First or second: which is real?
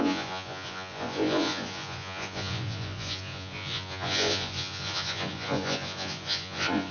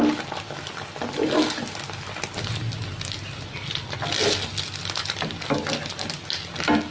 second